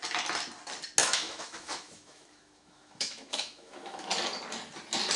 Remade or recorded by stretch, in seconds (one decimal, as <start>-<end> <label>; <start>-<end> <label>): 0.0-1.0 recorded; 1.0-4.1 remade; 4.1-5.2 recorded